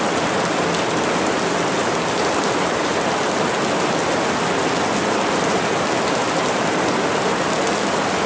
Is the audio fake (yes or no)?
no